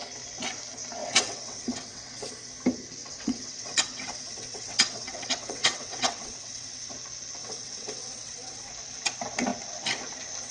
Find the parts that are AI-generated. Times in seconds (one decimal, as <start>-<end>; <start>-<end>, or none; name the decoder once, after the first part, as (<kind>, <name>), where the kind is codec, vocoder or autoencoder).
1.0-2.3 (vocoder, WaveNeXt); 3.0-6.9; 7.4-8.7